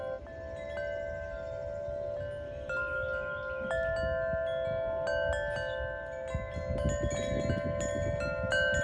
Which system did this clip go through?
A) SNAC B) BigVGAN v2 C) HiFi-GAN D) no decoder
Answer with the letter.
D